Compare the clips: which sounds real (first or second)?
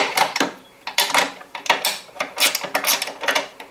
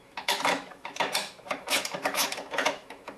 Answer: first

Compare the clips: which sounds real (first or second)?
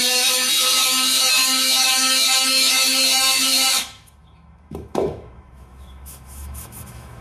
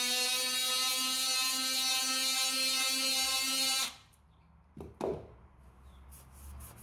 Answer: second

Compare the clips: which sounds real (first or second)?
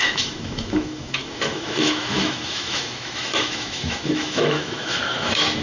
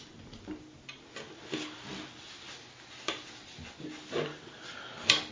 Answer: second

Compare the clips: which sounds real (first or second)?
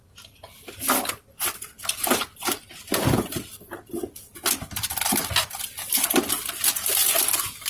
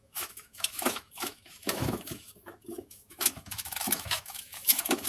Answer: first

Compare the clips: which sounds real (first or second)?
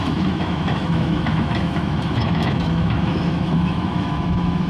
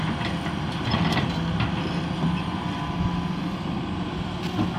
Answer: second